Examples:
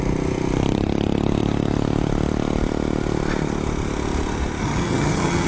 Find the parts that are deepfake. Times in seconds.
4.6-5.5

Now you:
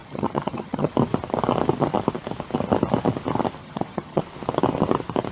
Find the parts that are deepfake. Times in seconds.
0.0-0.9; 3.6-4.2

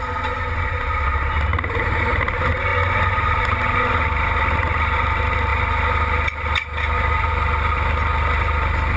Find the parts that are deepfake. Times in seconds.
none

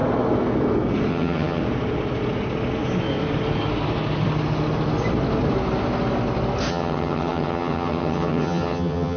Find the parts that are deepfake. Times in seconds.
1.1-1.6; 6.7-9.2

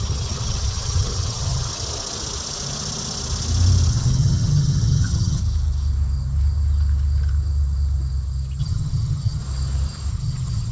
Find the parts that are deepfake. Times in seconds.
0.0-1.7; 3.9-5.4; 8.6-9.4; 10.1-10.7

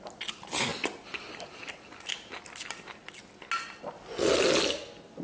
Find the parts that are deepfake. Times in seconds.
none